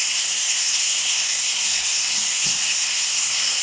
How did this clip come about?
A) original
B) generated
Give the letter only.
B